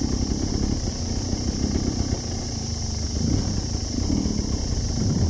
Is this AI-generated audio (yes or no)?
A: no